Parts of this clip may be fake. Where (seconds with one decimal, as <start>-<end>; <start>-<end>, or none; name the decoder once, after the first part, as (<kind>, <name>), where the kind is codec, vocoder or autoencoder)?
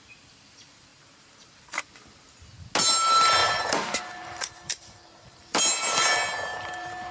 0.9-1.9 (vocoder, BigVGAN v2); 3.4-5.6; 6.5-7.1